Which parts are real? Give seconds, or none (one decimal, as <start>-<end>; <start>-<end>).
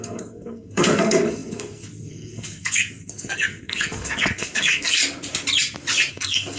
5.0-6.1